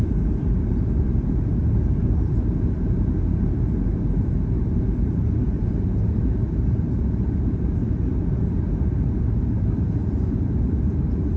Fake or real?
fake